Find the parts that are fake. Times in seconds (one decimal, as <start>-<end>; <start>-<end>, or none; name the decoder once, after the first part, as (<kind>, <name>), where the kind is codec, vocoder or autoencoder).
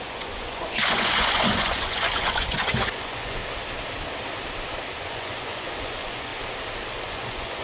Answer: 0.0-3.4 (vocoder, Vocos); 5.0-6.3; 7.0-7.6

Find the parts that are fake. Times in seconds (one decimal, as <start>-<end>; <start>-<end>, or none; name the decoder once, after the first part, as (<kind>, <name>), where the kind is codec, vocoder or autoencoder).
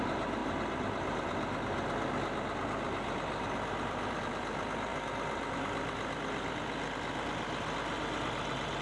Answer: none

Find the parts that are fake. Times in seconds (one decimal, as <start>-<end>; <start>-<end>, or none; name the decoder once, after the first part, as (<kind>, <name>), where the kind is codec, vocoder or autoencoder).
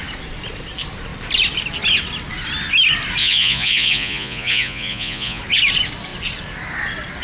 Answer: 3.2-5.4 (vocoder, Vocos)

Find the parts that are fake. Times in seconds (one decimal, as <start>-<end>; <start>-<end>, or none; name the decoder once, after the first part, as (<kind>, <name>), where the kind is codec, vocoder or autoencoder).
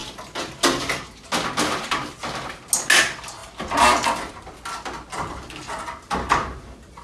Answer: none